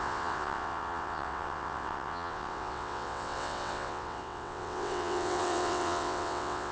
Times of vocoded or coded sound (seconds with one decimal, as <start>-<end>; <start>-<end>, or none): 0.0-6.7